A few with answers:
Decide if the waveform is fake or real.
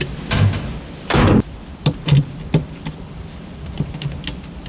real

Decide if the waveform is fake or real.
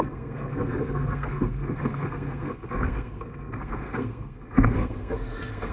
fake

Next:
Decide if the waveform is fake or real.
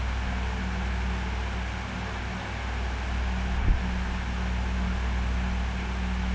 real